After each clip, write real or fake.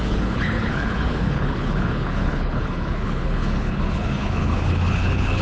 fake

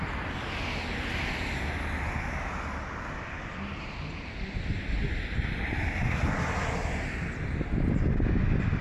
real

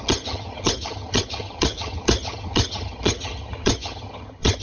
fake